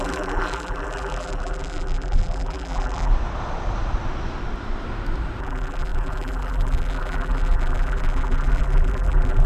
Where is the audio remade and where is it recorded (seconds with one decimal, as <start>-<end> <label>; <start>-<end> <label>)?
0.0-3.1 remade; 3.1-5.4 recorded; 5.4-9.5 remade